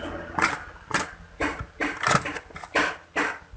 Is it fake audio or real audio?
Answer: real